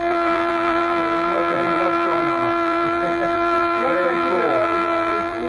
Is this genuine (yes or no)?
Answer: no